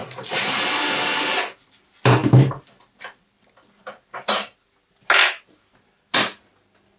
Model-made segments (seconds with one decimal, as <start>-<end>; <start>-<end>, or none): 0.0-0.7